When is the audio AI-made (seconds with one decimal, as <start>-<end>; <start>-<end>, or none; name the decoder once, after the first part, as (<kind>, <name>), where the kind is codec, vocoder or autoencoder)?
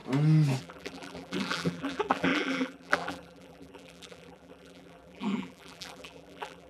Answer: 0.6-6.7 (vocoder, BigVGAN v2)